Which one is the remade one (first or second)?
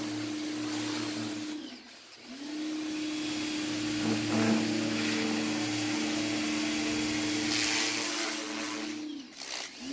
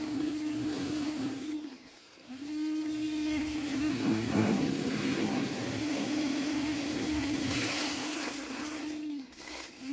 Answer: second